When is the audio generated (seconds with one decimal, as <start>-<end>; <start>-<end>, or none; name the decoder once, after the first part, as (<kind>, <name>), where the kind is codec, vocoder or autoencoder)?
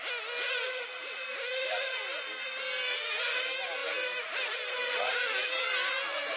none